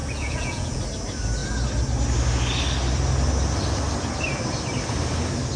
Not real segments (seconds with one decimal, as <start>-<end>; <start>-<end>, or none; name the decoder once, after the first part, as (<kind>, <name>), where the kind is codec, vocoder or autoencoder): 0.0-0.8 (vocoder, Vocos)